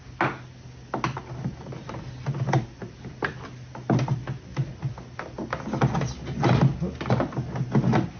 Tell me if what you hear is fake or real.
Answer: real